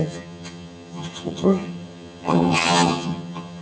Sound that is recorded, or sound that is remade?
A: remade